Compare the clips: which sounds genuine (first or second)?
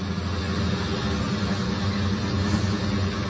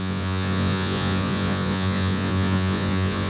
first